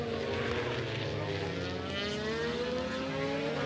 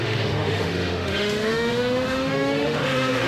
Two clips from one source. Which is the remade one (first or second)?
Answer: second